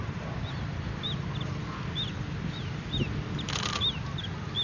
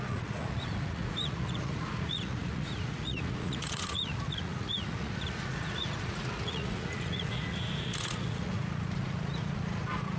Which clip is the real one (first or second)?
first